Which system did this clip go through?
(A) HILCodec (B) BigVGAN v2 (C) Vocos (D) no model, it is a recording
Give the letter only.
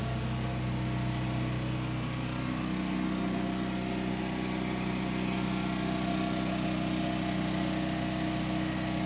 D